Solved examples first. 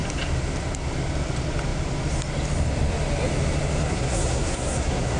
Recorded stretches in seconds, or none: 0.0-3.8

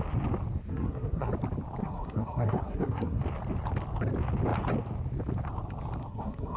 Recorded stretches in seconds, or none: 0.0-0.7; 1.3-1.8; 3.2-6.0